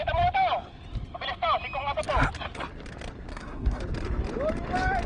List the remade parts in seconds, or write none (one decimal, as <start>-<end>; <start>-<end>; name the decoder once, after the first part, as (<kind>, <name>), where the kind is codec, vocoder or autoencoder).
3.3-3.8 (codec, SNAC)